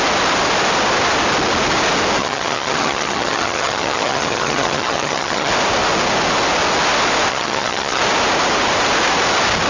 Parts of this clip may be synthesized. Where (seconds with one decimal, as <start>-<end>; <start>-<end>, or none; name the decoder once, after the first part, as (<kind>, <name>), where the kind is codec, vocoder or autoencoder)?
2.2-5.5 (vocoder, HiFi-GAN); 7.3-8.0